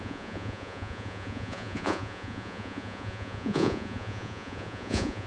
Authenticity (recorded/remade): remade